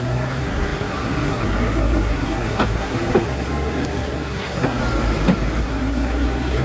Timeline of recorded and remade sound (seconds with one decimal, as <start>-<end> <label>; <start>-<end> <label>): 0.0-4.8 remade; 4.8-5.6 recorded; 5.6-6.6 remade